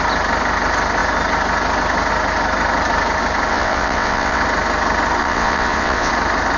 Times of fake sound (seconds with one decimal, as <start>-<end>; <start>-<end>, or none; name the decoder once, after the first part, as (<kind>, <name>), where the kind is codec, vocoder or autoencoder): 3.5-4.4 (vocoder, WaveNeXt); 5.2-6.1